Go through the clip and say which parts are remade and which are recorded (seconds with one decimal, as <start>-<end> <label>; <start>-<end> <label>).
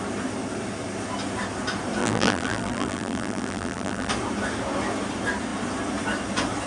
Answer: 0.0-2.0 recorded; 2.0-4.1 remade; 4.1-6.7 recorded